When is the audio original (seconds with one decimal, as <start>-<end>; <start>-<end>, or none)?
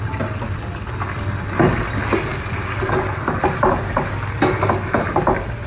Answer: 0.0-5.7